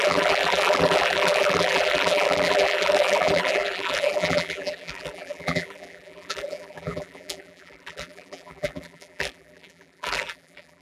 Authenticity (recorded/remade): remade